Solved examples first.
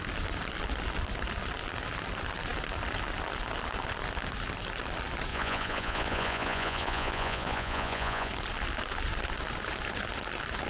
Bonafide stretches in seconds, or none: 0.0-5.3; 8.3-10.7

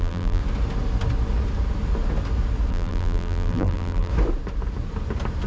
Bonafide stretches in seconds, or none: 0.4-2.7; 4.1-5.5

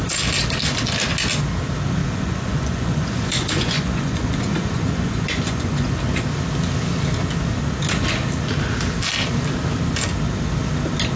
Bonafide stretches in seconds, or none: 0.0-2.0; 6.0-11.2